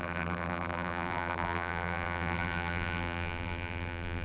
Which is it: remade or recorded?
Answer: remade